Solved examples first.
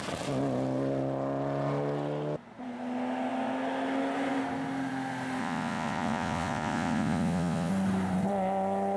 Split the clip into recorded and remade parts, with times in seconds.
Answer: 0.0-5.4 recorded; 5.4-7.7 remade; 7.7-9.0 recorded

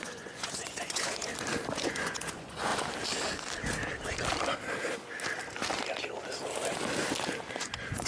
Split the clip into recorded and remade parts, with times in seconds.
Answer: 0.0-1.3 remade; 1.3-1.8 recorded; 1.8-2.7 remade; 2.7-7.6 recorded; 7.6-8.1 remade

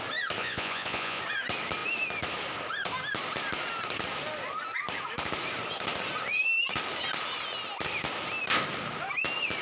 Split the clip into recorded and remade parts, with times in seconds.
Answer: 0.0-0.4 recorded; 0.4-1.2 remade; 1.2-9.6 recorded

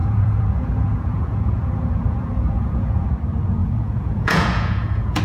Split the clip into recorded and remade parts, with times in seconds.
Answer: 0.0-3.1 remade; 3.1-3.6 recorded; 3.6-5.2 remade

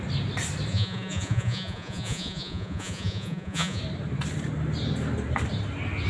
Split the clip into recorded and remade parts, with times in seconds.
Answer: 0.0-0.7 recorded; 0.7-3.8 remade; 3.8-6.1 recorded

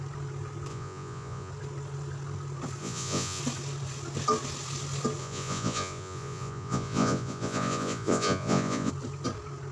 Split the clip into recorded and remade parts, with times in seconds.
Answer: 0.0-0.7 recorded; 0.7-1.5 remade; 1.5-2.8 recorded; 2.8-3.4 remade; 3.4-5.2 recorded; 5.2-8.9 remade; 8.9-9.7 recorded